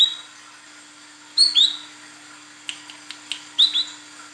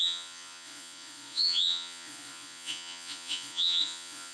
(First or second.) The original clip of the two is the first